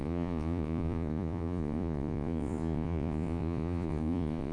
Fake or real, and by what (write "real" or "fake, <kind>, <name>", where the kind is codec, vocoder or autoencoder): fake, vocoder, Vocos